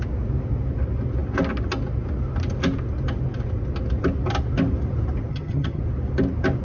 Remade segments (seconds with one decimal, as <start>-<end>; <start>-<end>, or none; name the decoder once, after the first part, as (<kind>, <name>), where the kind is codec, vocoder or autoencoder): 5.3-5.8 (vocoder, HiFi-GAN)